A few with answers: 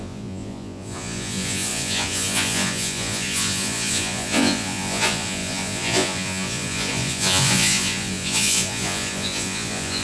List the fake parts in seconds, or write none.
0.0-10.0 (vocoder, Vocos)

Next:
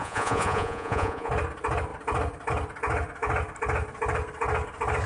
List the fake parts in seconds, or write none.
0.0-1.3 (vocoder, Vocos)

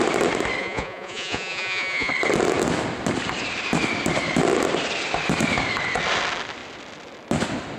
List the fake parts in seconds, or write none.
0.6-2.1 (vocoder, Vocos)

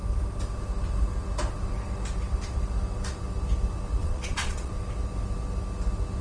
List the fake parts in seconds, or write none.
4.0-4.7 (vocoder, Vocos)

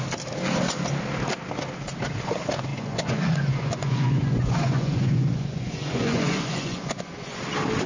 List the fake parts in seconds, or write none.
2.7-7.4 (vocoder, Vocos)

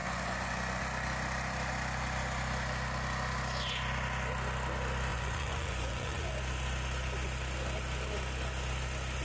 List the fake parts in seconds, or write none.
0.0-0.8 (vocoder, Vocos); 5.1-6.3

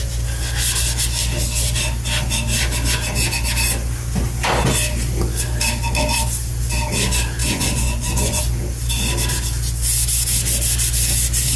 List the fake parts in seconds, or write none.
7.4-8.4 (vocoder, Vocos)

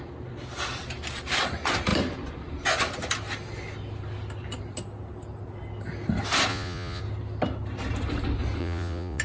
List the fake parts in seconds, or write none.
6.5-7.0 (vocoder, Vocos); 8.6-9.2